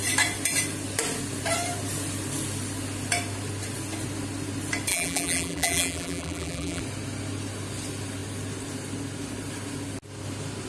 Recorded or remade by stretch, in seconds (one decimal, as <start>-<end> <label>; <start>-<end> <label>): 0.0-4.9 recorded; 4.9-6.8 remade; 6.8-10.7 recorded